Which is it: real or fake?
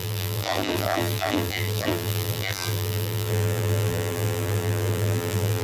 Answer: fake